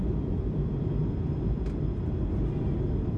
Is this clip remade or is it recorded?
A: recorded